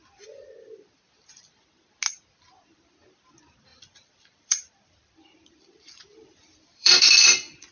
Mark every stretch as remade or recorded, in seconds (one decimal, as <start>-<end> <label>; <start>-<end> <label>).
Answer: 0.0-3.7 recorded; 3.7-7.7 remade